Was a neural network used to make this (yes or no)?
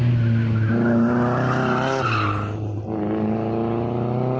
no